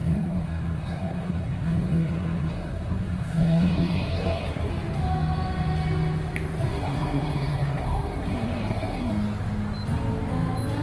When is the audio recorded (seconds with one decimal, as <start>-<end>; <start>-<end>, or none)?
4.7-6.7; 9.1-10.8